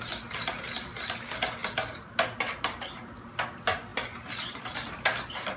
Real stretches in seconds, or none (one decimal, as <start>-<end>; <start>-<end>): 0.0-5.6